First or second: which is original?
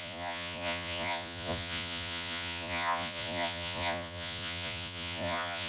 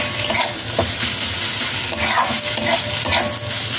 second